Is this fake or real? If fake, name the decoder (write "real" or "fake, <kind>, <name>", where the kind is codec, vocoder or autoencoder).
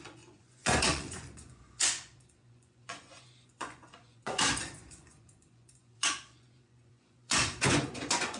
fake, vocoder, Vocos